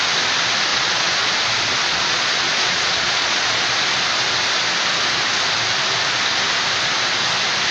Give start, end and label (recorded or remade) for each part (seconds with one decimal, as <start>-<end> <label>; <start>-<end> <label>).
0.0-0.7 recorded; 0.7-1.3 remade; 1.3-1.8 recorded; 1.8-3.7 remade; 3.7-7.7 recorded